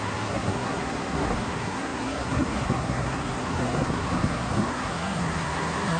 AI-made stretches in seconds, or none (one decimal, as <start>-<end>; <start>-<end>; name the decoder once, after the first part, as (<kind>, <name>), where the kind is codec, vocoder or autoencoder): 0.0-6.0 (codec, SNAC)